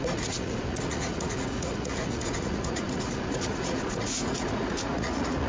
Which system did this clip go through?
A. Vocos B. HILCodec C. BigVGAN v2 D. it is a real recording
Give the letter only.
A